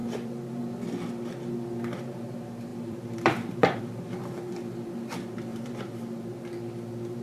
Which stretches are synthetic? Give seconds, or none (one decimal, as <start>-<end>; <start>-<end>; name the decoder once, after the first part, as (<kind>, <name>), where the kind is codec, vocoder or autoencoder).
0.0-0.6 (vocoder, BigVGAN v2); 2.7-3.8; 5.5-6.2